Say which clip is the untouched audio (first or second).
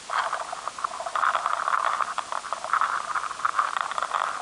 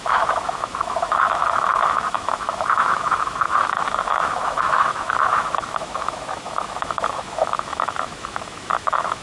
first